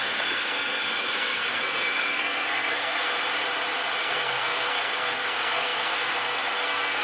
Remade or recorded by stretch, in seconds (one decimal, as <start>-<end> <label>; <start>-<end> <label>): 0.0-3.1 remade; 3.1-4.0 recorded; 4.0-7.0 remade